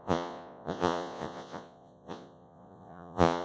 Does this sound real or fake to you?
fake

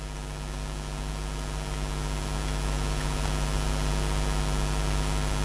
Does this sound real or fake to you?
real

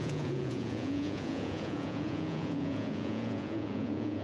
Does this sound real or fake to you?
fake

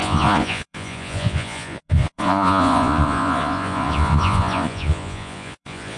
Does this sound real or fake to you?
fake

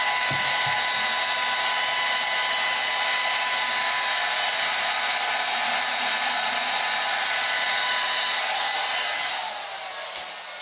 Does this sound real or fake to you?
real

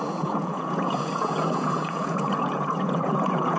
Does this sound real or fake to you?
fake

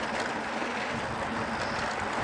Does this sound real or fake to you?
real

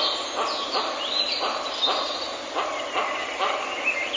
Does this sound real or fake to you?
real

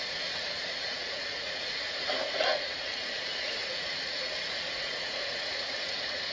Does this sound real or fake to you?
fake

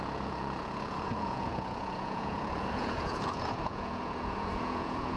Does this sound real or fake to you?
fake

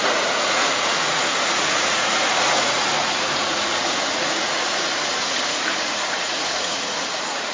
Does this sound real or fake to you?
fake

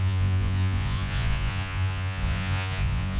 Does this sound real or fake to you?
fake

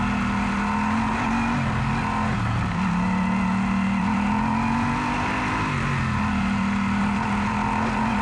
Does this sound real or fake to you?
real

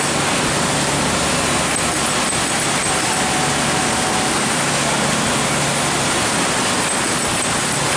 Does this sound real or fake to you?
real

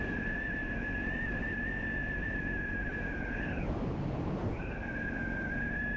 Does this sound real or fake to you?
real